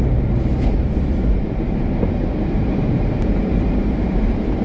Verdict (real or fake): fake